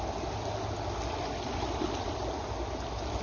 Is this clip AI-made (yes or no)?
no